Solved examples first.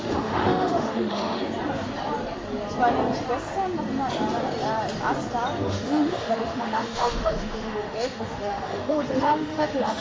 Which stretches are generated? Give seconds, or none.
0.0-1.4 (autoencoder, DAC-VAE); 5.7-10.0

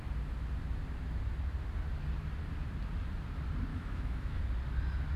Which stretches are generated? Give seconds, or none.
3.7-4.4 (autoencoder, DAC-VAE)

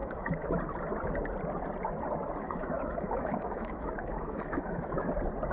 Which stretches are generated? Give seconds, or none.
0.0-0.6 (autoencoder, DAC-VAE); 2.4-5.1

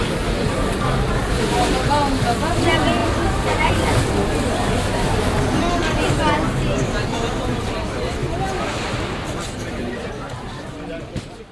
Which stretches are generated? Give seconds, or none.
none